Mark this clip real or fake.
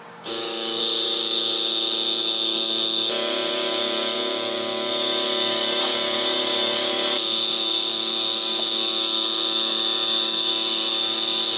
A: fake